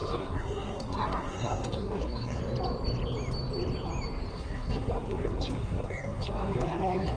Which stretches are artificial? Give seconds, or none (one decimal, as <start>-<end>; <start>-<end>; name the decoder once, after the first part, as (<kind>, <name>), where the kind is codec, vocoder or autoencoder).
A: 0.0-2.4 (codec, SNAC); 4.3-7.2